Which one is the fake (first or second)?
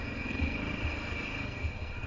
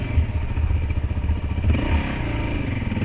first